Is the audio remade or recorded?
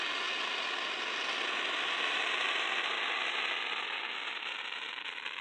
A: recorded